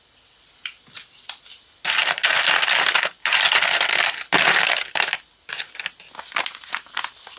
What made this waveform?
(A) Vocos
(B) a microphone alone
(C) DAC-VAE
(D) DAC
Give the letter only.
B